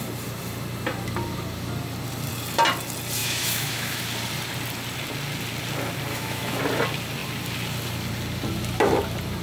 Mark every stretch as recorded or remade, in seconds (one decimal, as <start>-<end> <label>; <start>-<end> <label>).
0.0-3.2 recorded; 3.2-4.0 remade; 4.0-6.1 recorded; 6.1-6.6 remade; 6.6-9.4 recorded